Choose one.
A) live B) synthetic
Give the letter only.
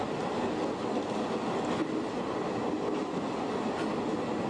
A